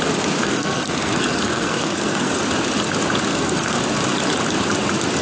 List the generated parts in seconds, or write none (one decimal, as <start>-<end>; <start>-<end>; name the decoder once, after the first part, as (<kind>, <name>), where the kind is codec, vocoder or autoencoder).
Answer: 0.4-2.4 (codec, SNAC); 3.3-3.8